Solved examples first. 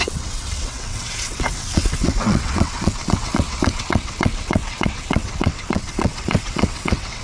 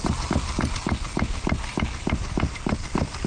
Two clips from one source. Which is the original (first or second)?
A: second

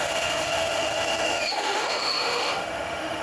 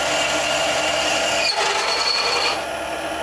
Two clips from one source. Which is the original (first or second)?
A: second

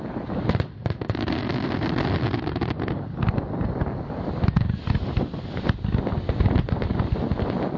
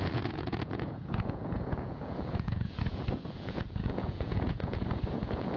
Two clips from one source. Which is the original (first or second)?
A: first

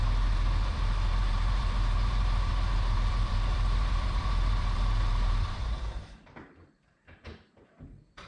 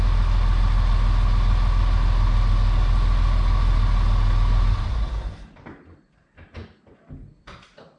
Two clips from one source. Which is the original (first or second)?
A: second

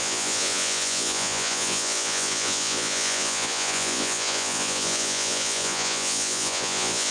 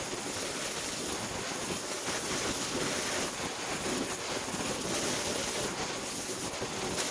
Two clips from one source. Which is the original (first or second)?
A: second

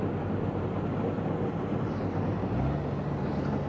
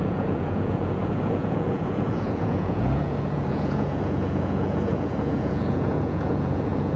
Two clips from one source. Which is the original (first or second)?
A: first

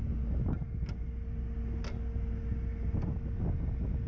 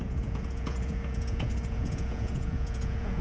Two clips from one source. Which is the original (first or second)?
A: first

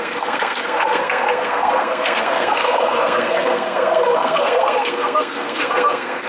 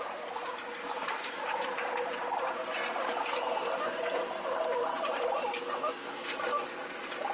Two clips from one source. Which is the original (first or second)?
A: second